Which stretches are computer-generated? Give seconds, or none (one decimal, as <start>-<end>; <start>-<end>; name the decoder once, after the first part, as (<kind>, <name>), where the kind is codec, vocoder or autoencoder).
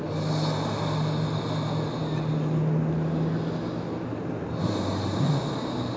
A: none